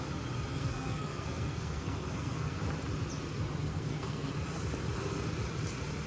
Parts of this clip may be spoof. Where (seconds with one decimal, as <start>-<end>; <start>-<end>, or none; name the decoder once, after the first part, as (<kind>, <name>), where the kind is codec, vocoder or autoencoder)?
0.5-2.6 (codec, SNAC); 3.7-4.3